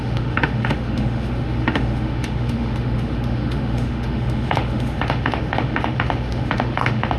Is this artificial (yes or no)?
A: yes